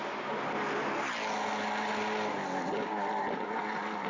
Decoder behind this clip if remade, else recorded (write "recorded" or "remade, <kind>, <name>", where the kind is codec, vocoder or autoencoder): recorded